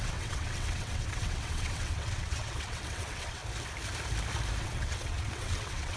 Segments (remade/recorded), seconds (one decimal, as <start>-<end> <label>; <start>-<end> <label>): 0.0-3.4 remade; 3.4-4.6 recorded; 4.6-6.0 remade